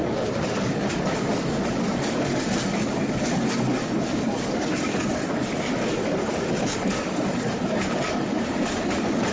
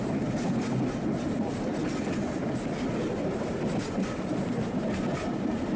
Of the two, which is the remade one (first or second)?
first